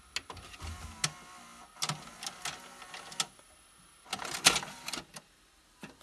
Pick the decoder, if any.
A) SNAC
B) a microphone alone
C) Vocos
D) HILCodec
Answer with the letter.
B